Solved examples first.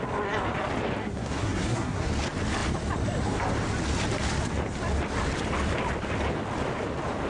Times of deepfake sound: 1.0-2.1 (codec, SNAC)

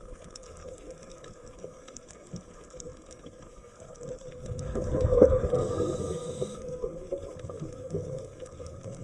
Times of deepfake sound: 0.0-9.0 (codec, SNAC)

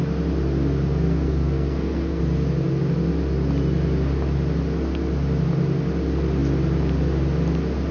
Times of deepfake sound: 0.9-2.2 (codec, SNAC)

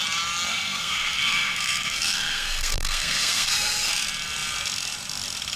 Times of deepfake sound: 0.5-3.9 (codec, SNAC)